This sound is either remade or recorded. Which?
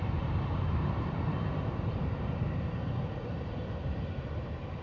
remade